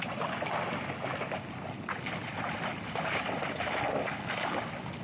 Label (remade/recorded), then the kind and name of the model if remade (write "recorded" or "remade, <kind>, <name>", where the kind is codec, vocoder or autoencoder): recorded